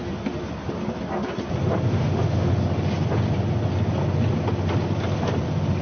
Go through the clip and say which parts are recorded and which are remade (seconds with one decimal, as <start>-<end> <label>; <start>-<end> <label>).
0.0-1.9 recorded; 1.9-2.5 remade; 2.5-5.8 recorded